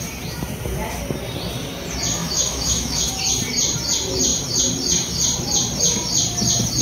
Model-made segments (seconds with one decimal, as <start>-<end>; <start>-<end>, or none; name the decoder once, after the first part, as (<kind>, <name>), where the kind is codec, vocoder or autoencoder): 2.2-3.1 (autoencoder, DAC-VAE)